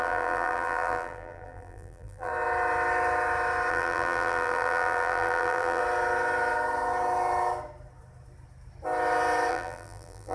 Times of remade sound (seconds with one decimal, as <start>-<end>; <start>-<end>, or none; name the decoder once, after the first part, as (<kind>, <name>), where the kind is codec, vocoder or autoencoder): 0.0-2.3 (vocoder, BigVGAN v2); 3.7-5.8; 9.5-10.3